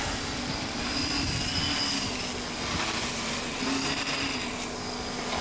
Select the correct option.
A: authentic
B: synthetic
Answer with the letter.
A